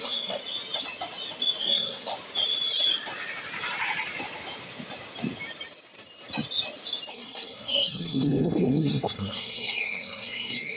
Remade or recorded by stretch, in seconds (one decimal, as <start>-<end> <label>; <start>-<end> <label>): 0.0-0.4 remade; 0.4-1.6 recorded; 1.6-2.1 remade; 2.1-7.1 recorded; 7.1-10.8 remade